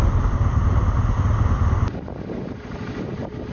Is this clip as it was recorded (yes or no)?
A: yes